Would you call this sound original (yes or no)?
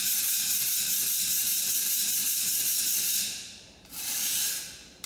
no